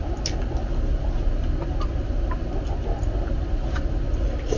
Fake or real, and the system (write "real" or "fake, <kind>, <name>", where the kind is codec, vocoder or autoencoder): real